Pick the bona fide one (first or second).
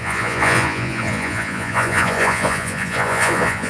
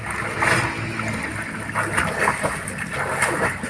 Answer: second